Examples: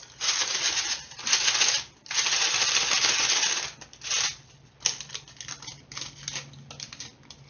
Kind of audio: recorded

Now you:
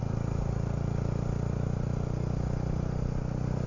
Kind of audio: recorded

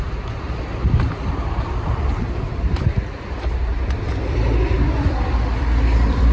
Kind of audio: remade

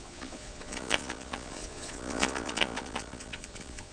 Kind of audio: remade